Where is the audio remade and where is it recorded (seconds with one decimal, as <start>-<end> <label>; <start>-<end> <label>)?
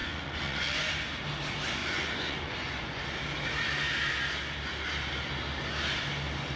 0.0-0.9 remade; 0.9-1.8 recorded; 1.8-3.0 remade; 3.0-6.6 recorded